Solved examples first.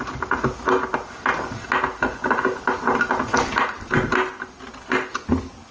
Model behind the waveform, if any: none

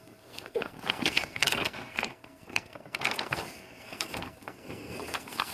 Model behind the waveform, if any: codec, SNAC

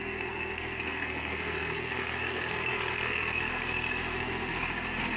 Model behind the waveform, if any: codec, SNAC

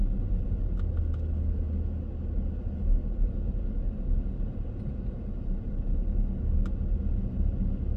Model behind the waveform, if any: none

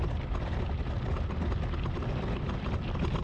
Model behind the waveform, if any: none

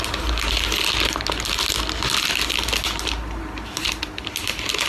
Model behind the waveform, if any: none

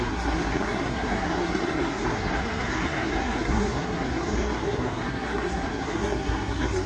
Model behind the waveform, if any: codec, SNAC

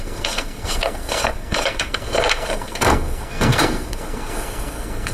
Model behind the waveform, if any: codec, SNAC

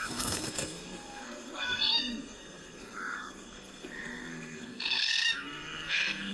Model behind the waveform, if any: codec, SNAC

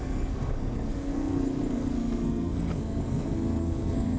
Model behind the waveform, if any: codec, SNAC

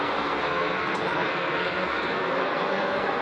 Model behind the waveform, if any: codec, SNAC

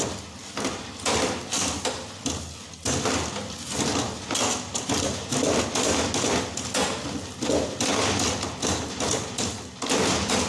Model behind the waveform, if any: none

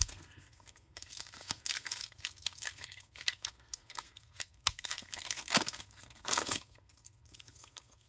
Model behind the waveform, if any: codec, SNAC